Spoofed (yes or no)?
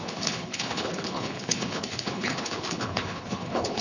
yes